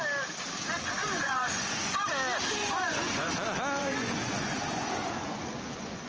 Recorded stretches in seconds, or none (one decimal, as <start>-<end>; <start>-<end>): 0.0-1.0; 2.1-2.6; 3.3-3.8